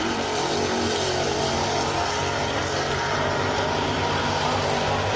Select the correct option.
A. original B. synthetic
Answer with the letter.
B